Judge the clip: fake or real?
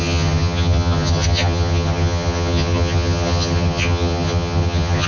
fake